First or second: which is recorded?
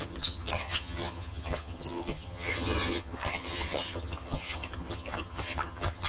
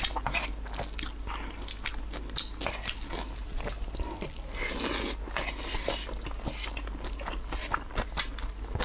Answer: second